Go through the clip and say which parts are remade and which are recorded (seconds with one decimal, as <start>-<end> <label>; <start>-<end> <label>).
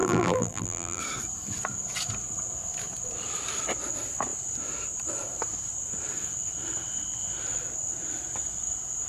0.0-1.0 remade; 1.0-9.1 recorded